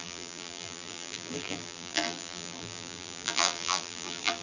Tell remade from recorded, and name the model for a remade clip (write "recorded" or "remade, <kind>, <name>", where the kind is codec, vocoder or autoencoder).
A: remade, vocoder, BigVGAN v2